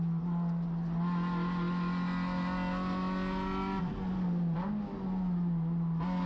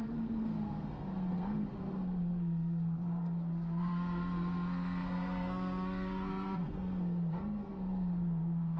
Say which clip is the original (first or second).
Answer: first